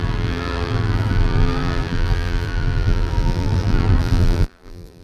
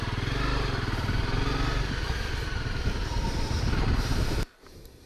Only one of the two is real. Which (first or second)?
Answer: second